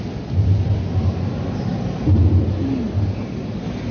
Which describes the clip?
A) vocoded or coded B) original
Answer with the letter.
B